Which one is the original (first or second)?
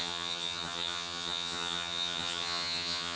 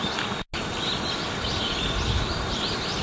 second